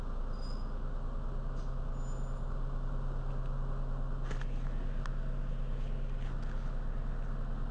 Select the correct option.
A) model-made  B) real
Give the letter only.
B